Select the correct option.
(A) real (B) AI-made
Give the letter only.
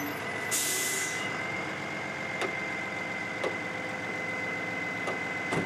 A